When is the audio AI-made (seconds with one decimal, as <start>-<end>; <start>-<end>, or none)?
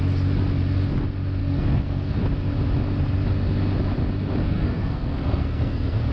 1.4-2.2; 4.4-6.1